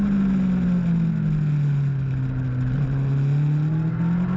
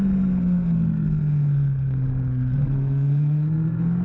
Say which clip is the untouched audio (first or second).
first